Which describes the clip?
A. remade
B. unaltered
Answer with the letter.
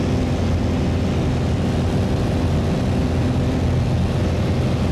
B